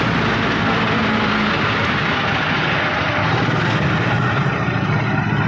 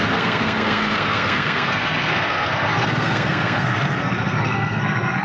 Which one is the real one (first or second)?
first